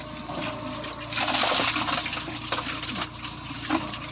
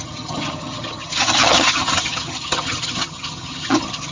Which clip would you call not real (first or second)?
second